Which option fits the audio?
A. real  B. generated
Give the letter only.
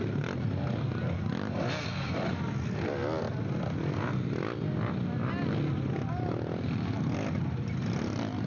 A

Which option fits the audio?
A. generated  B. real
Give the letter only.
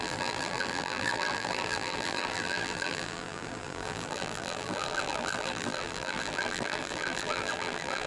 A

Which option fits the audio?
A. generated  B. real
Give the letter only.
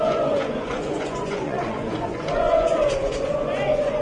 A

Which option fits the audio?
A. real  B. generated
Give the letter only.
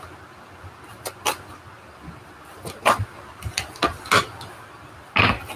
A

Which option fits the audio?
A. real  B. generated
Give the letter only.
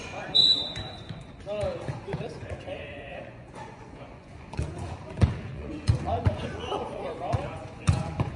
B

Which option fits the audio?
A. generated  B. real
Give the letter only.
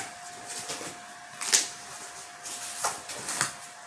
B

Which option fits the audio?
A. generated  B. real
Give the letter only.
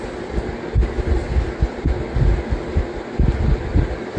B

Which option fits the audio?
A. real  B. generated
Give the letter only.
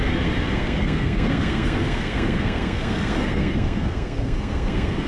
B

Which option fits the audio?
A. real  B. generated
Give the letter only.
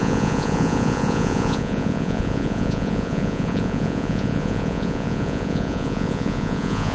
B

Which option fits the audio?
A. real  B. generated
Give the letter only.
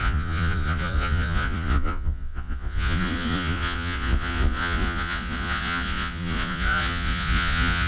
B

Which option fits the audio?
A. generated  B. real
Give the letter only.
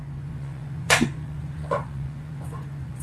A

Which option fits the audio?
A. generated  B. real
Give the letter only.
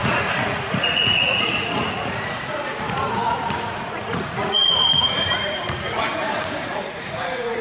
A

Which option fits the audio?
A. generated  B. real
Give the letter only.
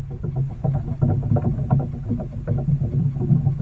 B